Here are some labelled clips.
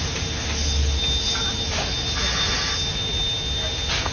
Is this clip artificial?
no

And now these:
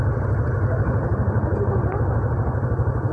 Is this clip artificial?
no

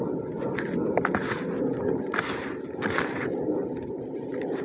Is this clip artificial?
no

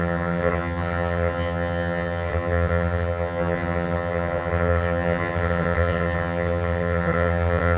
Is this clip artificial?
yes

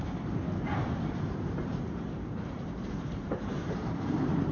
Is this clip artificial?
yes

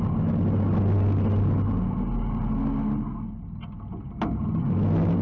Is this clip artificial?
no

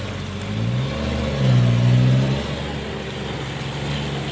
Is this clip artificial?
no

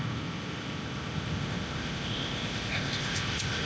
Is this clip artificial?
yes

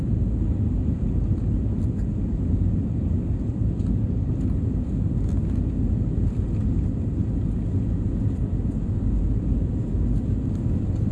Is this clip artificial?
no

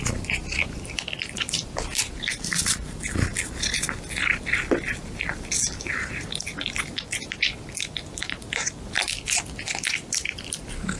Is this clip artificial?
no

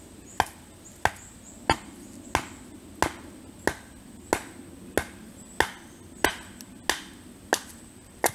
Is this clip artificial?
no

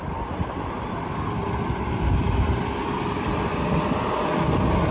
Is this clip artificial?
no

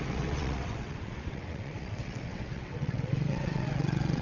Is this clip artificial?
yes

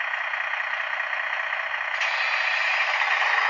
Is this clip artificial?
no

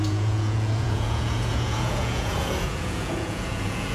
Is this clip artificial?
yes